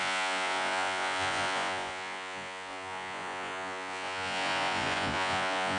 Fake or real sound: fake